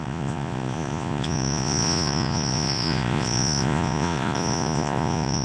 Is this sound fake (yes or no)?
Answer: yes